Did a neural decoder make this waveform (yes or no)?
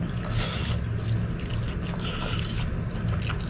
no